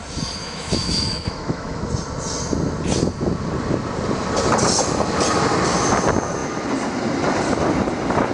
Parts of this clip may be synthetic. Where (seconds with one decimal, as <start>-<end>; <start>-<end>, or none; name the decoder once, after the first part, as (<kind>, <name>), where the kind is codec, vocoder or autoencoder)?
0.4-1.9 (autoencoder, DAC-VAE)